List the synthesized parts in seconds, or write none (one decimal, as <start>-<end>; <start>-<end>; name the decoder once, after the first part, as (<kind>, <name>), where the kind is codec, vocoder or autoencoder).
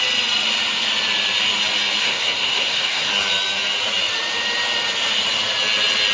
2.0-3.1 (codec, SNAC)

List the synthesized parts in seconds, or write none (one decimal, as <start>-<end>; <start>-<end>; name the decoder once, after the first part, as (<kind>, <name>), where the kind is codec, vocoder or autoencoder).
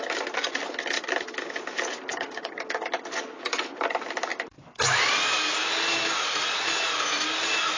2.1-2.8 (codec, DAC)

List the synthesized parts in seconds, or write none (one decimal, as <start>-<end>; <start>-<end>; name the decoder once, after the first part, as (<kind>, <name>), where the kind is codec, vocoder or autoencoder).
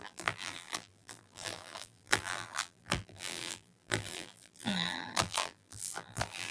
0.0-6.5 (vocoder, BigVGAN v2)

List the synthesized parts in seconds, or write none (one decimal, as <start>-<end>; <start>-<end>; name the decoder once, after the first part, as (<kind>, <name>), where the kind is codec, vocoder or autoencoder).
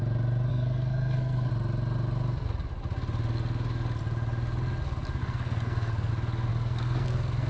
0.5-1.5 (codec, SNAC); 5.2-6.1; 6.5-7.5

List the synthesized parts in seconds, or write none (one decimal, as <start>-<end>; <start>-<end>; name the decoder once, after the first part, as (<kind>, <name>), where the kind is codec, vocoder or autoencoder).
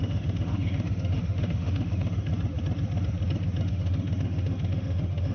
0.0-2.3 (autoencoder, DAC-VAE); 3.6-5.3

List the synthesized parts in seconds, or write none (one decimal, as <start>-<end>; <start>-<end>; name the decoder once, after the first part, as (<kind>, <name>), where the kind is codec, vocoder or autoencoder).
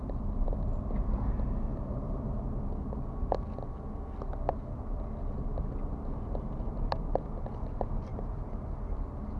1.9-2.4 (vocoder, BigVGAN v2); 8.1-8.6